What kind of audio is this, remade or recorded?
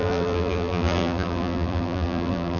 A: remade